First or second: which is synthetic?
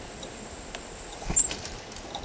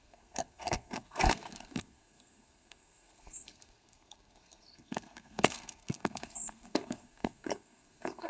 second